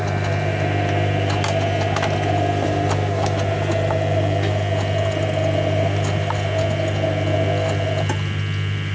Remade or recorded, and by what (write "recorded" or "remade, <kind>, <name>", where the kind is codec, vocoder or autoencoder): recorded